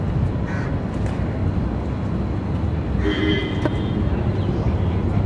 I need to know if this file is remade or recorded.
recorded